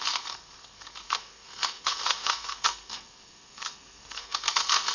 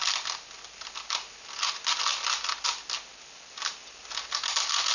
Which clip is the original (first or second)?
second